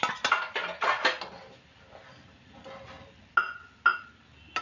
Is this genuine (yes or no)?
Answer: yes